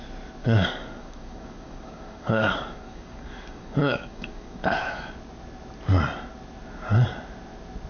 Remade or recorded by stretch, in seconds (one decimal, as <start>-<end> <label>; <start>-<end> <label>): 0.0-0.4 recorded; 0.4-5.1 remade; 5.1-7.9 recorded